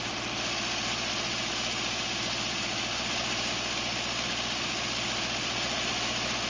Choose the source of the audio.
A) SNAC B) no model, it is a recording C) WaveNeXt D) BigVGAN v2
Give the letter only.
B